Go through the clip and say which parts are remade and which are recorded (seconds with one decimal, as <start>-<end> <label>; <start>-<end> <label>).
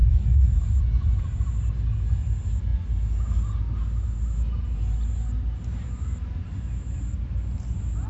0.0-0.8 remade; 0.8-8.1 recorded